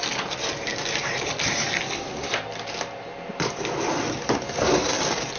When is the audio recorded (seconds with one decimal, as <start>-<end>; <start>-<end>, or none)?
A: 0.0-5.4